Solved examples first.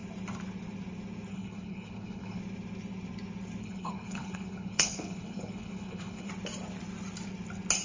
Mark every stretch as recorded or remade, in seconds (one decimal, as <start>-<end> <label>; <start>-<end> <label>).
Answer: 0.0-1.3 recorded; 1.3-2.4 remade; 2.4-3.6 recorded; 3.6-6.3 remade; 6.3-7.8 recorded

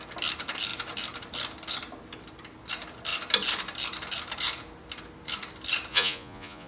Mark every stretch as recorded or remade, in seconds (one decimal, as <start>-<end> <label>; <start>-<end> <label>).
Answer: 0.0-5.9 recorded; 5.9-6.7 remade

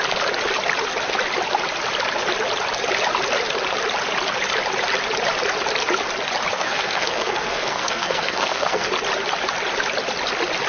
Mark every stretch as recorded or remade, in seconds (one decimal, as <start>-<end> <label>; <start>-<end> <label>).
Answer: 0.0-6.5 recorded; 6.5-8.9 remade; 8.9-10.7 recorded